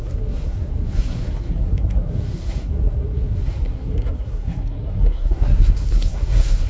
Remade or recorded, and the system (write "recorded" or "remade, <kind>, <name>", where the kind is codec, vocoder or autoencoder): remade, codec, SNAC